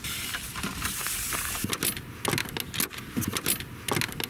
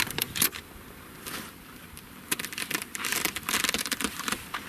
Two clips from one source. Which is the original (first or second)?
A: first